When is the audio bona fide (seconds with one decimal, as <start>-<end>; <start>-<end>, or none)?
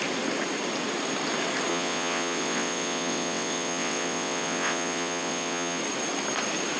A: 0.0-1.7; 5.8-6.8